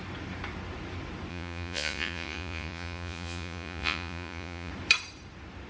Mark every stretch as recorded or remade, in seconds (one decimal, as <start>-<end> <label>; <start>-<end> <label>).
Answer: 0.0-1.3 recorded; 1.3-4.7 remade; 4.7-5.7 recorded